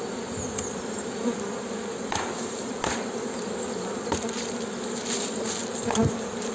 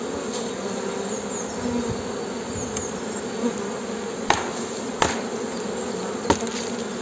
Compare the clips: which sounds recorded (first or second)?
second